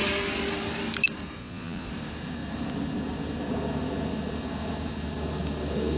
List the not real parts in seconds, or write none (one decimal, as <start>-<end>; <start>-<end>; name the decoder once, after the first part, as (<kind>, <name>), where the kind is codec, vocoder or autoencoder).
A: 1.4-1.9 (vocoder, Vocos)

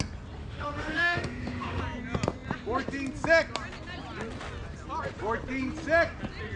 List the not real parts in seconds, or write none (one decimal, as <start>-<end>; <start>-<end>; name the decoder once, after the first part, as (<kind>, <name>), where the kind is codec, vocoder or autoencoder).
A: 0.4-1.8 (autoencoder, DAC-VAE)

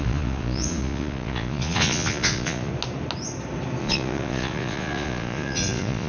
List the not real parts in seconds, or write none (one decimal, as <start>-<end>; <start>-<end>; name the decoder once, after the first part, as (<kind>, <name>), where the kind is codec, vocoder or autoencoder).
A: 0.0-2.7 (vocoder, Vocos); 3.8-6.1

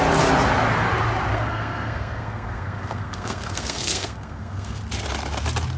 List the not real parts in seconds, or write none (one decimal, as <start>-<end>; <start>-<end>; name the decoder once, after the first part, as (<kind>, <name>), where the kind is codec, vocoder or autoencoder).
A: 1.3-4.8 (codec, SNAC)

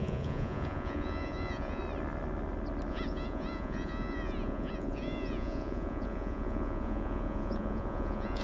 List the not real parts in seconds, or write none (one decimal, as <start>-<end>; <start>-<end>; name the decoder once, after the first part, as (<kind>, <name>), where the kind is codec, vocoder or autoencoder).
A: 0.0-1.8 (vocoder, Vocos); 2.9-8.4